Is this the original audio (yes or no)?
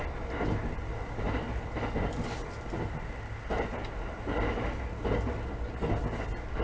yes